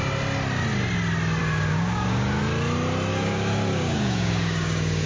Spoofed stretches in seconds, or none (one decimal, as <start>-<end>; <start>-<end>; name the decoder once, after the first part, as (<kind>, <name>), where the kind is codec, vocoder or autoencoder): 1.4-2.4 (codec, DAC); 3.1-5.1